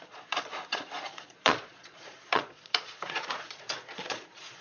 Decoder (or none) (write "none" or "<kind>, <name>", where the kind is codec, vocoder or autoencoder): vocoder, Vocos